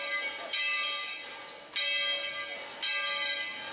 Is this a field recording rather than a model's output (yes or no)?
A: yes